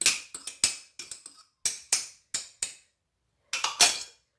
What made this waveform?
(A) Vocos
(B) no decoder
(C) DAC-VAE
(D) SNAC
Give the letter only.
B